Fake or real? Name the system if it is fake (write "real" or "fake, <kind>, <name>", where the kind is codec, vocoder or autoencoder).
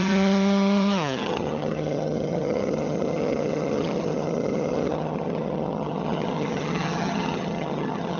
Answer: fake, vocoder, HiFi-GAN